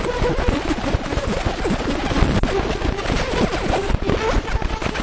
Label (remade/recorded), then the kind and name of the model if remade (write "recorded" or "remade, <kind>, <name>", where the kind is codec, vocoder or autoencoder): recorded